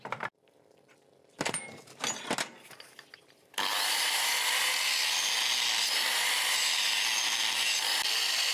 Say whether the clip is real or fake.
real